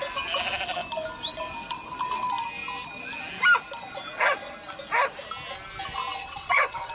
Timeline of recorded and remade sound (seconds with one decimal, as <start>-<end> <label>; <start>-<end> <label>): 0.0-6.1 recorded; 6.1-6.9 remade